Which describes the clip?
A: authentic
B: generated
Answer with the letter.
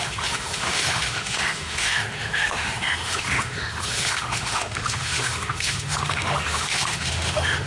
B